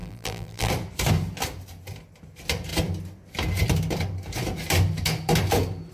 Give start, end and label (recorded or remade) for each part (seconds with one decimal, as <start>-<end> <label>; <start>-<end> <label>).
0.0-0.7 remade; 0.7-5.9 recorded